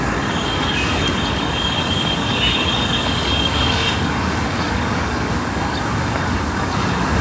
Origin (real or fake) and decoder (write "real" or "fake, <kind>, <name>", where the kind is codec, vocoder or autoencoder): fake, codec, DAC